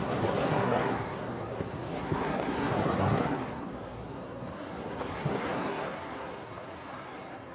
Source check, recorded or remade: remade